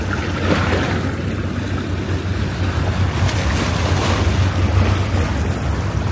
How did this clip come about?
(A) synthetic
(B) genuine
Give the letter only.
B